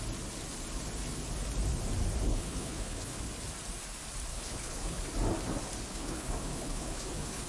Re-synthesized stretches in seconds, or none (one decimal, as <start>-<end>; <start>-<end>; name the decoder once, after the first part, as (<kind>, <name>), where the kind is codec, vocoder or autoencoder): 2.3-3.2 (codec, HILCodec); 4.3-5.0; 5.9-7.5